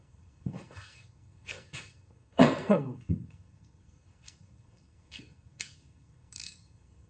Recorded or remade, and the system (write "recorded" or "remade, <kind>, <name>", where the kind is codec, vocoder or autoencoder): remade, codec, SNAC